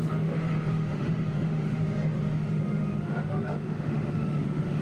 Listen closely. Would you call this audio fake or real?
fake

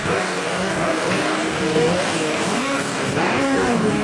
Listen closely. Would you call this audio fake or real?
fake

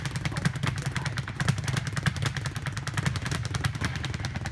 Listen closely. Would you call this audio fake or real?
real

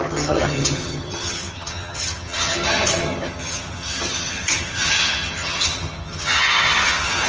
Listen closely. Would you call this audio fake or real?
fake